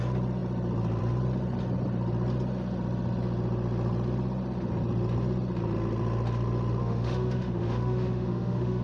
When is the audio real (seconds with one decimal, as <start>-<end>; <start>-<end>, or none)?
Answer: 0.0-6.8